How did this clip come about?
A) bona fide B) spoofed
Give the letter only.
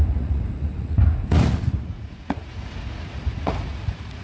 B